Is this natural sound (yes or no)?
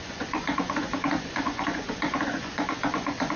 no